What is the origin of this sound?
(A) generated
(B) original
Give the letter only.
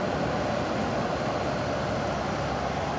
B